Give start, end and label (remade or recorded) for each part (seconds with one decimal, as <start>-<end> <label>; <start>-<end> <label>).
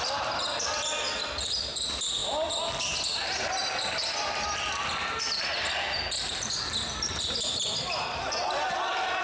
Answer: 0.0-9.2 recorded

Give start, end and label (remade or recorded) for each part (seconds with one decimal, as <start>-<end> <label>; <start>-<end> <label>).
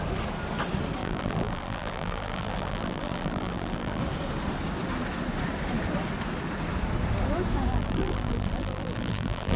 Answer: 0.0-1.0 recorded; 1.0-4.0 remade; 4.0-7.7 recorded; 7.7-9.6 remade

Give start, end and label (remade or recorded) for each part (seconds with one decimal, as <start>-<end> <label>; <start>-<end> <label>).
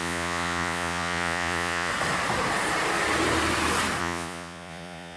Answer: 0.0-1.9 remade; 1.9-4.0 recorded; 4.0-5.2 remade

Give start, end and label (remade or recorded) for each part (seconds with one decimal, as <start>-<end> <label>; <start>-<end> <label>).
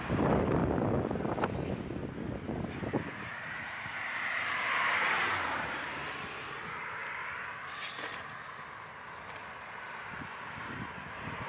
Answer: 0.0-0.6 remade; 0.6-3.3 recorded; 3.3-7.0 remade; 7.0-10.7 recorded; 10.7-11.5 remade